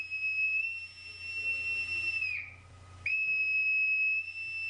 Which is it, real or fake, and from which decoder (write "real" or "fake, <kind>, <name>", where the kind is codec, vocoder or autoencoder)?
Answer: real